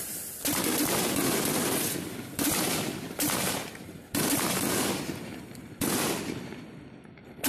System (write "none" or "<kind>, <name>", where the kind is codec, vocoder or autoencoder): none